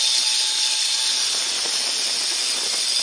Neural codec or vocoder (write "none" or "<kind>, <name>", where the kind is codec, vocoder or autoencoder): none